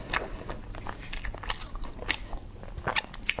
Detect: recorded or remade recorded